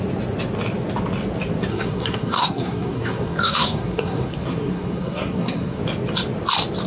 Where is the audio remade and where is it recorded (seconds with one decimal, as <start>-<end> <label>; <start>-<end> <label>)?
0.0-1.7 recorded; 1.7-5.8 remade; 5.8-6.9 recorded